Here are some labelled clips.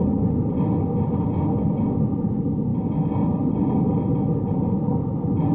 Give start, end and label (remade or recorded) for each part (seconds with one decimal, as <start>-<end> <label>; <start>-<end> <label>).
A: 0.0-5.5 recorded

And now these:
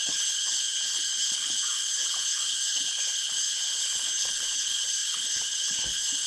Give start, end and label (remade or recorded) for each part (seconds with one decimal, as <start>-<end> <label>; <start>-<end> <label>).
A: 0.0-6.3 remade

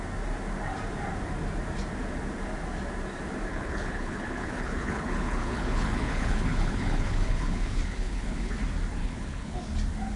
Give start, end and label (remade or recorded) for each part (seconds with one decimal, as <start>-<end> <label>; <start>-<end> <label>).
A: 0.0-3.5 recorded; 3.5-8.6 remade; 8.6-9.0 recorded; 9.0-9.6 remade; 9.6-10.2 recorded

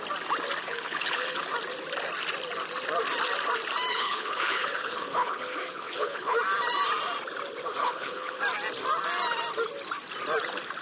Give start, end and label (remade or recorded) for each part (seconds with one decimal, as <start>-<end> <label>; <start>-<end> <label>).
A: 0.0-0.6 recorded; 0.6-1.4 remade; 1.4-3.9 recorded; 3.9-6.4 remade; 6.4-7.8 recorded; 7.8-8.4 remade; 8.4-10.8 recorded

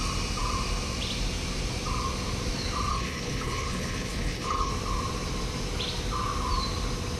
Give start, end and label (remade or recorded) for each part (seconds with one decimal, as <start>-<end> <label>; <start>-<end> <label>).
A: 0.0-2.9 recorded; 2.9-4.7 remade; 4.7-7.2 recorded